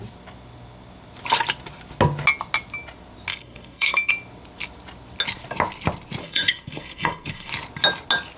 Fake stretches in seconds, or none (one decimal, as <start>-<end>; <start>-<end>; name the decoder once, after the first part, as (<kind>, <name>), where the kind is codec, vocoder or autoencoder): 3.3-4.1 (codec, SNAC); 6.2-7.5